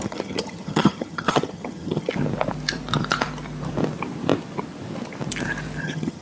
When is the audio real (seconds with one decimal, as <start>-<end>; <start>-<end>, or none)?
2.1-5.8